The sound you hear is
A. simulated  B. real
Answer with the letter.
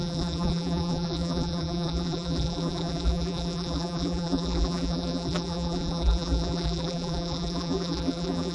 A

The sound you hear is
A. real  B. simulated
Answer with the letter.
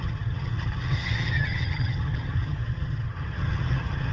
B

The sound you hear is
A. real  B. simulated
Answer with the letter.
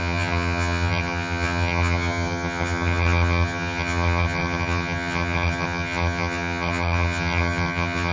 B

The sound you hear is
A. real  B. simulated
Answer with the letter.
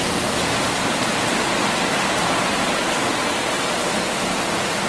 A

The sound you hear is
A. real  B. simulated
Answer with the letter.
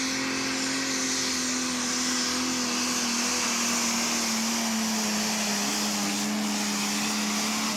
A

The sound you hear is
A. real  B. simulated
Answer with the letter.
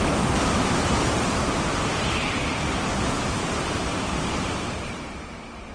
B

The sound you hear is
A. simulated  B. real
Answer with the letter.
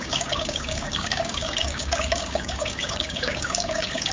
A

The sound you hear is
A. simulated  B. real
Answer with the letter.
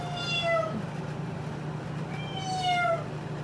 B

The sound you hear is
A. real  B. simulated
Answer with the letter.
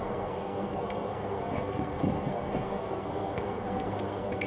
B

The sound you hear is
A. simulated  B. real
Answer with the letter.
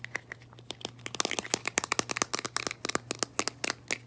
B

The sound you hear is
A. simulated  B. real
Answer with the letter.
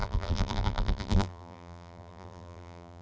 A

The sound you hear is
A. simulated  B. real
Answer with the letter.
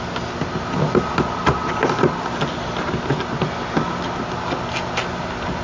B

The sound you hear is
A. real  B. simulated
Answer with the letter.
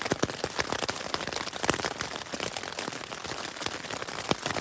A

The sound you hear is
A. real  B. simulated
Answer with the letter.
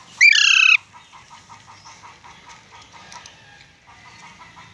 A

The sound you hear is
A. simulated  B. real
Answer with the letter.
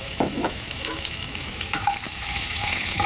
A